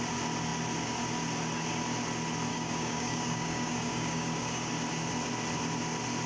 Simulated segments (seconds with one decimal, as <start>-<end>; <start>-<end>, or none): 2.5-4.7